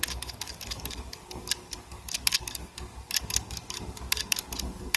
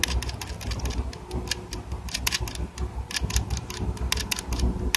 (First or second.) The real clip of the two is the second